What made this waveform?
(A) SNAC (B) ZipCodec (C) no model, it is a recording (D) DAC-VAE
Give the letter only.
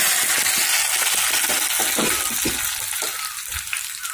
C